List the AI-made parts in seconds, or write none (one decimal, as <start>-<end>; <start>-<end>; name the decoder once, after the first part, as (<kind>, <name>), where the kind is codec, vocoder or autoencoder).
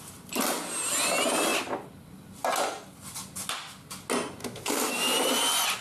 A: 4.4-4.9 (autoencoder, DAC-VAE)